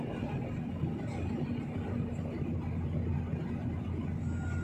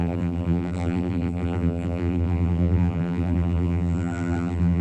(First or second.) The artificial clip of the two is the second